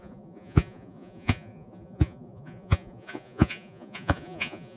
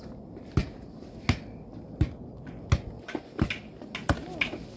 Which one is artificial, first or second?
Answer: first